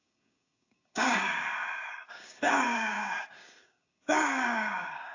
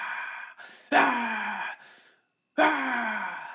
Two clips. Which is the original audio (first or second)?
second